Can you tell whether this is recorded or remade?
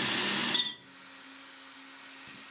recorded